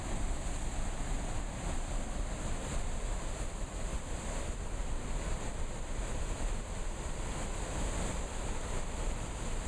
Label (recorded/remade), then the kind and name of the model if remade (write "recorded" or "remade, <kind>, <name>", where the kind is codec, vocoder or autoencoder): remade, vocoder, BigVGAN v2